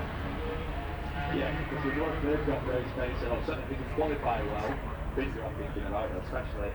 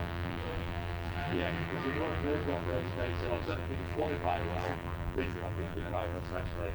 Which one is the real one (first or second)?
first